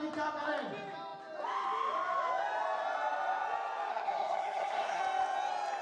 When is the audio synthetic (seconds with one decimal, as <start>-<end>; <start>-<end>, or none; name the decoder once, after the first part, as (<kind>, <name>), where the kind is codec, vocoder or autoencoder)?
3.9-5.0 (codec, SNAC)